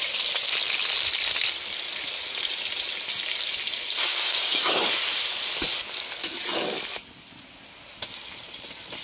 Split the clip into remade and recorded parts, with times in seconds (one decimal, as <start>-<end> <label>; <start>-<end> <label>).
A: 0.0-4.1 recorded; 4.1-4.9 remade; 4.9-9.0 recorded